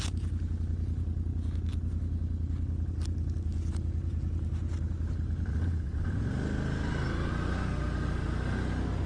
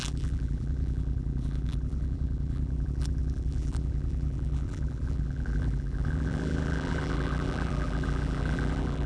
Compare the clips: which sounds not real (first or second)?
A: second